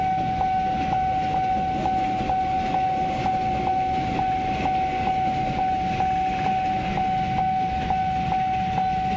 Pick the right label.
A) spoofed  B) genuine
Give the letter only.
B